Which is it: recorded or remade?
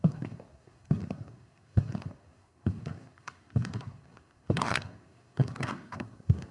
remade